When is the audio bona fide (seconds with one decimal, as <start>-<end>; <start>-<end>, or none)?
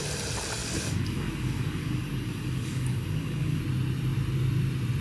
0.0-0.6; 3.6-5.0